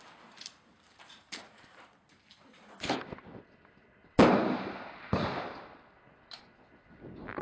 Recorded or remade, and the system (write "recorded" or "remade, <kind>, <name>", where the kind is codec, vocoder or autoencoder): recorded